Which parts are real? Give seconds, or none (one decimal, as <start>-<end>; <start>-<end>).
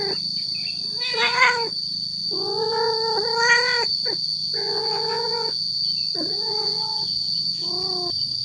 0.0-2.2; 2.9-4.3; 5.8-6.3; 7.7-8.4